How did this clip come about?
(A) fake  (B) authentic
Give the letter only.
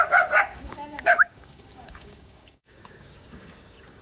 A